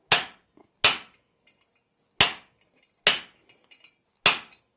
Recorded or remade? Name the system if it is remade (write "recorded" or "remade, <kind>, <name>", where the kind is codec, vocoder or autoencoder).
recorded